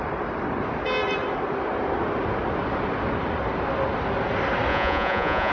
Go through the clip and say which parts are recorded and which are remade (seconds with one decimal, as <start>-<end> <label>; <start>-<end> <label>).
0.0-4.7 recorded; 4.7-5.5 remade